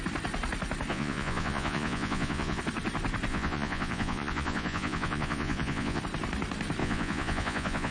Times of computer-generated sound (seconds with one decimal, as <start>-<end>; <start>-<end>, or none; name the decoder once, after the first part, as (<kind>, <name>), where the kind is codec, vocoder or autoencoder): 0.9-2.6 (vocoder, Vocos); 3.3-6.0; 6.8-7.9